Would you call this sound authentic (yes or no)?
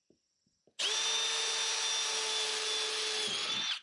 yes